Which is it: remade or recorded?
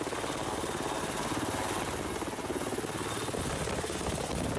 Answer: recorded